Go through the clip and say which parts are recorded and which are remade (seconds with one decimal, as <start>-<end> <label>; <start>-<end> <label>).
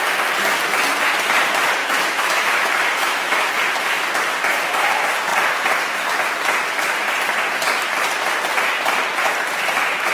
0.0-1.8 recorded; 1.8-3.5 remade; 3.5-10.1 recorded